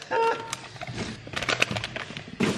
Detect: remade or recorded recorded